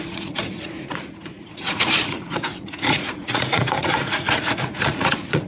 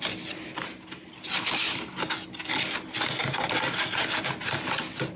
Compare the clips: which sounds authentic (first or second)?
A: second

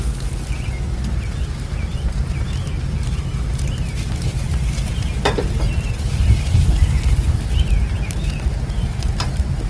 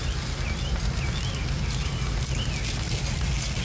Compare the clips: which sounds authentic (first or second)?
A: second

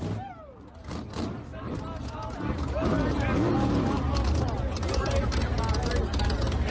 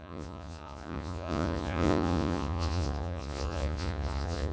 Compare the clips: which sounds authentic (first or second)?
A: first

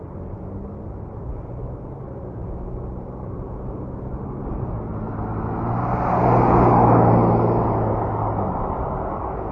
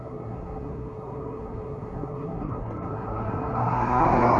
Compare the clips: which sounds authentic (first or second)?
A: first